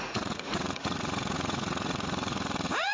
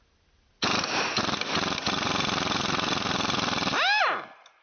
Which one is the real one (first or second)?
second